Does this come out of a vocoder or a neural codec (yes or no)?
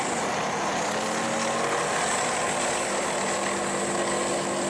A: no